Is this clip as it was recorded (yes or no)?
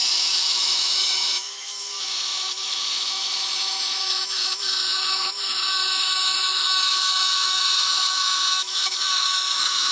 no